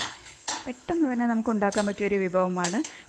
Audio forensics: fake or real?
fake